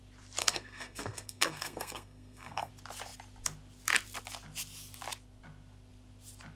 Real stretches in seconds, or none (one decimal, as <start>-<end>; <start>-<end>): 0.0-0.4; 2.7-6.6